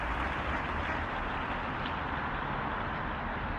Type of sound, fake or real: real